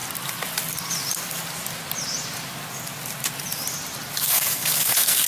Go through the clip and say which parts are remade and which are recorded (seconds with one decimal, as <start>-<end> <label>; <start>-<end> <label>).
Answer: 0.0-4.2 recorded; 4.2-5.3 remade